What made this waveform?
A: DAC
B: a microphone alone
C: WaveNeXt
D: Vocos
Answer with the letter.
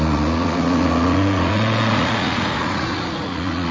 D